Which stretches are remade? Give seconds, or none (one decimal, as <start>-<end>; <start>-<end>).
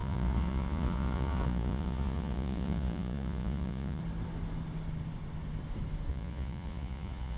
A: 0.0-4.0; 6.1-7.4